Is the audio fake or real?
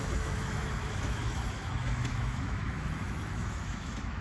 fake